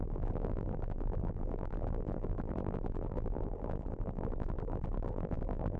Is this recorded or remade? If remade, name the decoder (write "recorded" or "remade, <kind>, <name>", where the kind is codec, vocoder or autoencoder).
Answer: remade, vocoder, BigVGAN v2